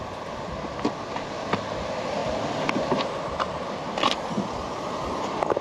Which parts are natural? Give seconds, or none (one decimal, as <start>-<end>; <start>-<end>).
0.0-5.6